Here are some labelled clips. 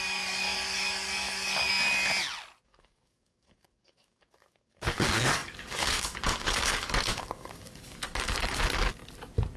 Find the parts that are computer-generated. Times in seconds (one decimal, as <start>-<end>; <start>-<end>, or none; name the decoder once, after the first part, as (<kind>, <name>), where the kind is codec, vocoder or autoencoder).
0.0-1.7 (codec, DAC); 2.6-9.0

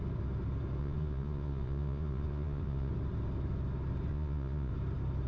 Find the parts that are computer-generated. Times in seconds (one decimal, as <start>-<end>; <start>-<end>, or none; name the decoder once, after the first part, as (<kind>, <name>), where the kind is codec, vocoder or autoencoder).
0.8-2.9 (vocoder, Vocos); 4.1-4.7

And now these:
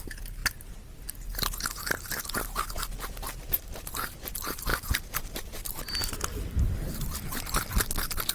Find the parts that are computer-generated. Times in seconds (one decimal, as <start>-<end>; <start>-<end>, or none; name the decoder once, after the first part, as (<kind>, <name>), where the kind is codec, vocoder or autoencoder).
0.0-0.4 (vocoder, BigVGAN v2); 3.8-8.3